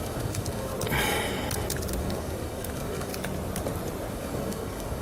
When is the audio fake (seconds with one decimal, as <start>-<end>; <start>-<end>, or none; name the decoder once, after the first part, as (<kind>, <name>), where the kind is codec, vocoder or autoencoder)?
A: 0.0-0.7 (codec, DAC); 2.0-3.1; 4.1-5.0